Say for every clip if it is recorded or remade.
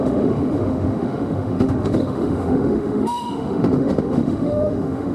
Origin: remade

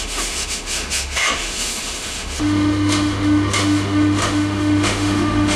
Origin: remade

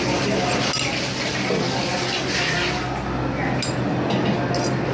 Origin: recorded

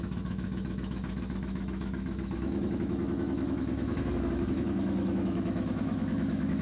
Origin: remade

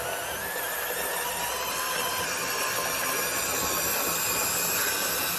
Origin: recorded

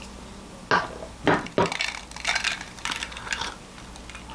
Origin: recorded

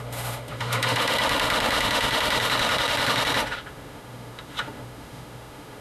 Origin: remade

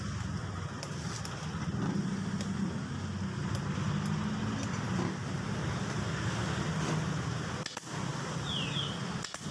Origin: recorded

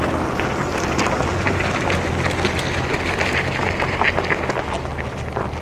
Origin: recorded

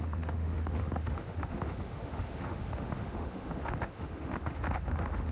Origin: remade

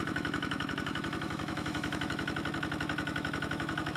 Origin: remade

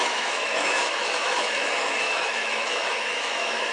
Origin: remade